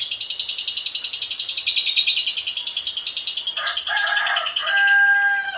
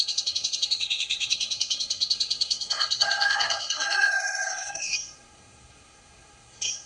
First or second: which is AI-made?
second